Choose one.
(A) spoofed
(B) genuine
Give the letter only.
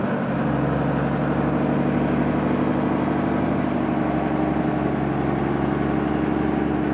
B